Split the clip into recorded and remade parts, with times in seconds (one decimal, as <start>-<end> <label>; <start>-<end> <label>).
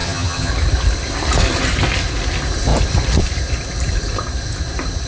0.0-0.5 remade; 0.5-5.1 recorded